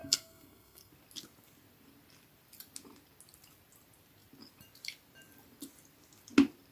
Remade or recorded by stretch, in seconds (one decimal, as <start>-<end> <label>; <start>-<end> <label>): 0.0-0.9 remade; 0.9-6.7 recorded